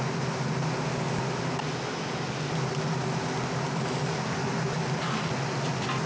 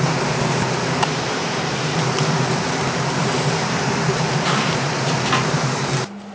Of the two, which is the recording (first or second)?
first